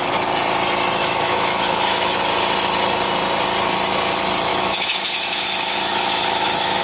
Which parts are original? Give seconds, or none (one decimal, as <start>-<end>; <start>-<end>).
0.0-1.0; 2.2-4.5